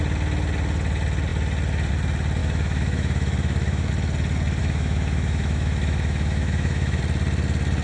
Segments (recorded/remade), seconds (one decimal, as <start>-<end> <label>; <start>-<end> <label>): 0.0-2.4 recorded; 2.4-3.9 remade; 3.9-4.6 recorded; 4.6-7.0 remade; 7.0-7.8 recorded